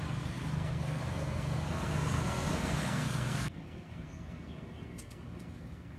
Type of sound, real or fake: fake